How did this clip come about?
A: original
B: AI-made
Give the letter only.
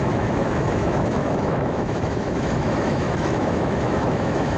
B